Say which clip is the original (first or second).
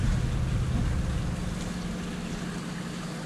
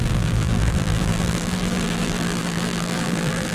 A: first